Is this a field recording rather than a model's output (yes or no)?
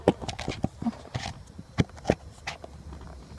yes